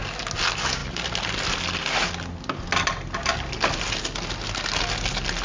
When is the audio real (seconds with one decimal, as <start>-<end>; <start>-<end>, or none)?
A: 0.0-5.4